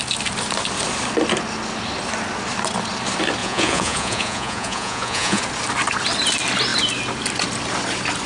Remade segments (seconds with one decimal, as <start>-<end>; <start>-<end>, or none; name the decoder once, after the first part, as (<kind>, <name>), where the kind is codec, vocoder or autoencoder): 3.4-5.4 (vocoder, Vocos)